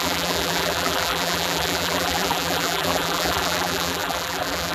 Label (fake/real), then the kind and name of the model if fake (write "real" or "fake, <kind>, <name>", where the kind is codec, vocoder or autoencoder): fake, vocoder, BigVGAN v2